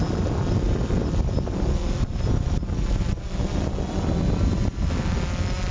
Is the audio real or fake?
real